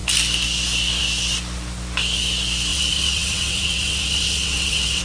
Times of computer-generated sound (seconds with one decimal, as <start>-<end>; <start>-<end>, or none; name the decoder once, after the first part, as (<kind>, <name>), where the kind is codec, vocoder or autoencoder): 2.7-5.0 (vocoder, WaveNeXt)